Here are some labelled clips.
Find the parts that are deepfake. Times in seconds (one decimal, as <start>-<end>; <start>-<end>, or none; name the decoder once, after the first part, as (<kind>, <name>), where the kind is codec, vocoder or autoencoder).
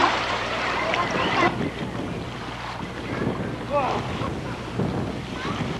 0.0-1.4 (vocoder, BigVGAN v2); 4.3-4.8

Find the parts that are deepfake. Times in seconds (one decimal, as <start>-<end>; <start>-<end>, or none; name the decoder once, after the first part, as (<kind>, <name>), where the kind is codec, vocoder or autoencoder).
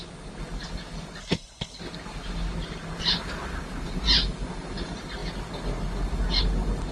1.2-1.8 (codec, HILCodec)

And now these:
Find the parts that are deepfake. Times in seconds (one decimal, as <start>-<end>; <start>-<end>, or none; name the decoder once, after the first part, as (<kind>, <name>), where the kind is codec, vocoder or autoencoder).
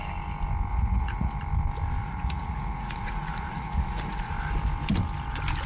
0.7-1.4 (vocoder, Vocos); 2.0-4.3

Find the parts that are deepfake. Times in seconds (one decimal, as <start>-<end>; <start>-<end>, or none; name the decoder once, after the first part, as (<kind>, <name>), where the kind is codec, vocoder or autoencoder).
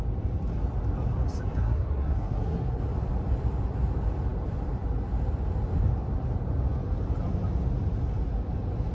1.6-2.8 (codec, SNAC)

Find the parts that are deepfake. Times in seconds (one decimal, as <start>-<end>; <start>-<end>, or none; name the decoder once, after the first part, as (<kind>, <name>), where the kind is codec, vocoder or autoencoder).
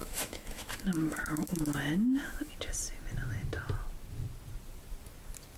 0.0-2.5 (autoencoder, DAC-VAE)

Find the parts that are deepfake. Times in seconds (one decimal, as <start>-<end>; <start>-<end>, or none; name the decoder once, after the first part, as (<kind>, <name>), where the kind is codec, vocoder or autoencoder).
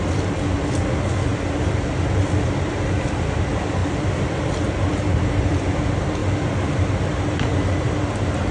none